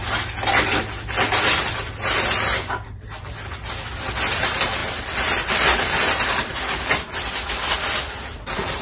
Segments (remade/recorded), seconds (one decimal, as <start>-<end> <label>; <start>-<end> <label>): 0.0-8.8 recorded